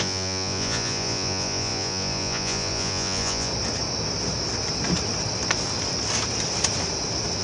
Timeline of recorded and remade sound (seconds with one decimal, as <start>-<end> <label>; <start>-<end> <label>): 0.0-3.5 remade; 3.5-7.4 recorded